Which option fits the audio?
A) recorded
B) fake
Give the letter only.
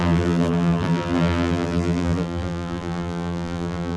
B